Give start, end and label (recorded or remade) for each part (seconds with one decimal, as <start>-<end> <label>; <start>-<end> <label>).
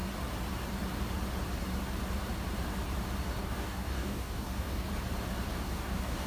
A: 0.0-3.4 recorded; 3.4-4.9 remade; 4.9-5.5 recorded; 5.5-6.3 remade